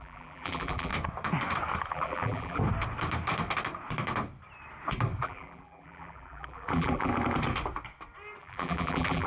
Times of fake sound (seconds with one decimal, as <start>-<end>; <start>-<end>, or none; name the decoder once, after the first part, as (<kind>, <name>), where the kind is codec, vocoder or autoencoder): 0.0-0.9 (vocoder, BigVGAN v2); 1.9-2.6; 5.2-7.1; 8.4-9.3